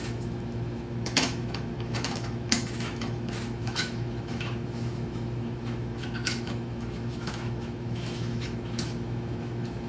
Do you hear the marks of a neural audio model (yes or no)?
yes